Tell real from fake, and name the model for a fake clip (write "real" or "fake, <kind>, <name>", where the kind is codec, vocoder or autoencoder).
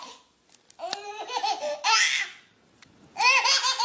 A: real